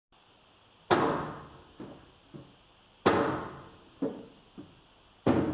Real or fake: real